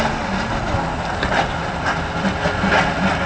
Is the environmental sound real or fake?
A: real